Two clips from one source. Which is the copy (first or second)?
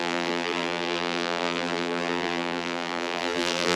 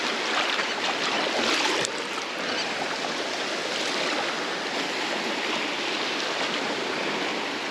first